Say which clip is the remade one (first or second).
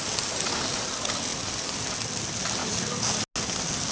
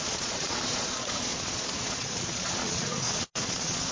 second